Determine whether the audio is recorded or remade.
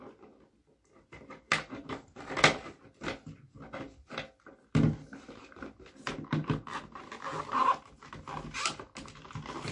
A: recorded